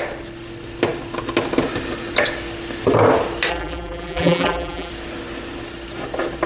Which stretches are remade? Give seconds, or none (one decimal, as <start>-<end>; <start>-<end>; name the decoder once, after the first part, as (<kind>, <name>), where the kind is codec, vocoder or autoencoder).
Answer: 3.5-4.9 (vocoder, BigVGAN v2)